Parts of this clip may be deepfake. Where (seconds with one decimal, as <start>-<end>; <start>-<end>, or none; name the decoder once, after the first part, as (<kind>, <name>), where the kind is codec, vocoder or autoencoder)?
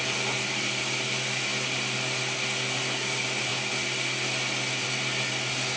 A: none